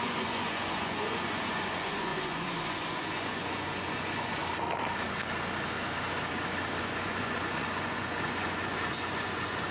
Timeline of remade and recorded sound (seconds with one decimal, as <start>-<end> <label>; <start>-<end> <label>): 0.0-4.4 remade; 4.4-6.8 recorded; 6.8-9.7 remade